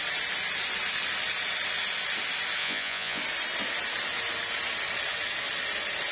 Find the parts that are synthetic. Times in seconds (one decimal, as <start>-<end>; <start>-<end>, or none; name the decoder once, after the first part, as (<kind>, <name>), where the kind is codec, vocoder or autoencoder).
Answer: 2.6-3.2 (vocoder, Vocos)